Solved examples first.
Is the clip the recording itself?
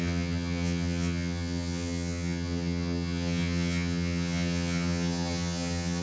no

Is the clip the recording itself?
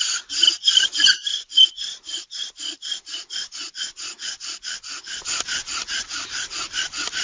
yes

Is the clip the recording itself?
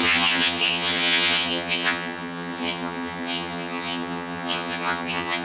no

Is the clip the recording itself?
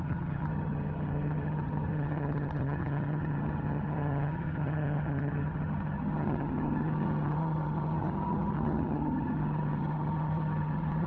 no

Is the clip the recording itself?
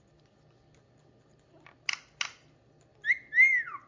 yes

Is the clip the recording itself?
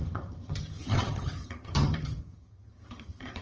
no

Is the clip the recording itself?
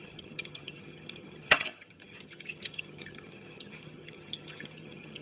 no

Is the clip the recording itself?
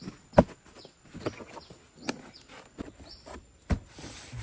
yes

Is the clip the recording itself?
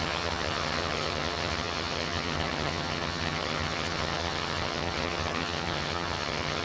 no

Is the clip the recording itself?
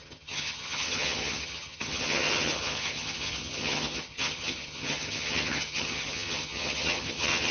no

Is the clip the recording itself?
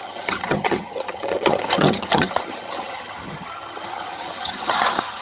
no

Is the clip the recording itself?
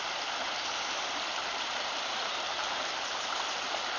yes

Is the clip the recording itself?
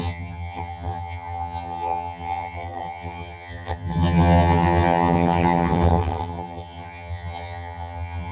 no